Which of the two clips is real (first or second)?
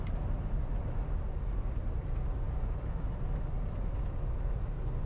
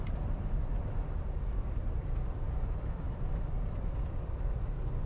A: first